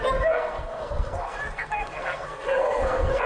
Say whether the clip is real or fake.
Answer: fake